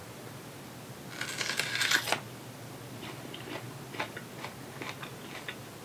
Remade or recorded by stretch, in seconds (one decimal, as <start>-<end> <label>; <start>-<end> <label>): 0.0-5.8 recorded